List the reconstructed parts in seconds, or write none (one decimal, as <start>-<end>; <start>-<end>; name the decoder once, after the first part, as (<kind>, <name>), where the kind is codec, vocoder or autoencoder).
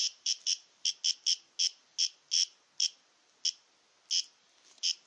0.0-0.9 (vocoder, BigVGAN v2)